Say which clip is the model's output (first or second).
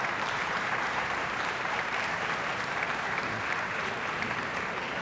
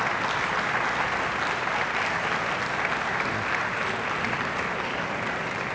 first